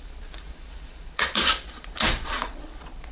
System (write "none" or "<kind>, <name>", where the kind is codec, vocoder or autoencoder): vocoder, Vocos